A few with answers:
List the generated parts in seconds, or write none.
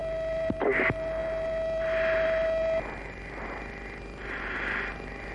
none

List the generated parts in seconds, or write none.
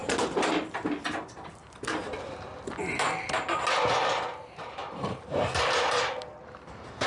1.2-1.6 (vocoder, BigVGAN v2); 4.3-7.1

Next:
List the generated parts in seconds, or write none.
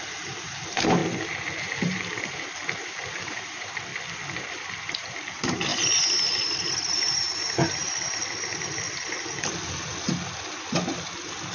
0.0-1.0 (vocoder, BigVGAN v2); 1.6-3.9; 4.5-5.7; 6.6-7.8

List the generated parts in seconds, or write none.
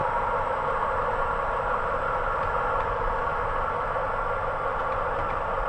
0.0-2.1 (vocoder, BigVGAN v2); 4.8-5.7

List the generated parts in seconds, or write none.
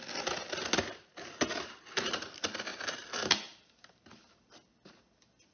1.5-2.3 (vocoder, BigVGAN v2); 2.7-4.4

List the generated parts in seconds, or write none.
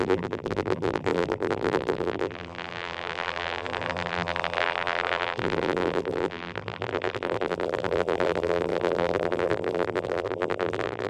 0.0-11.1 (vocoder, BigVGAN v2)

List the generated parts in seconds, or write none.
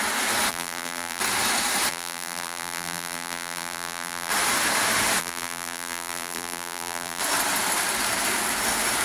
0.5-1.2 (vocoder, BigVGAN v2); 1.9-4.3; 5.2-7.2